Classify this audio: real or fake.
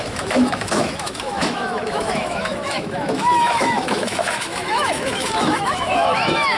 fake